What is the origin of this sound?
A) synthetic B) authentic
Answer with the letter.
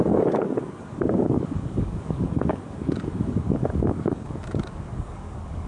A